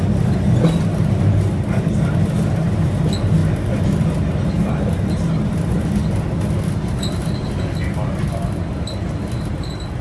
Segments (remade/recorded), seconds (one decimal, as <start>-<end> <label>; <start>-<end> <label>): 0.0-0.9 recorded; 0.9-1.8 remade; 1.8-10.0 recorded